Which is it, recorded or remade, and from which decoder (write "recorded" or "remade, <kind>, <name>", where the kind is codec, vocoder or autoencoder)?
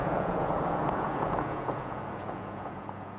remade, vocoder, Vocos